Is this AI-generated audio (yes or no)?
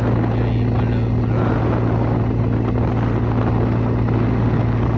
no